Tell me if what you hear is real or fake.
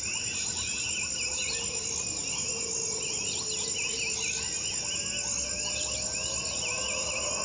real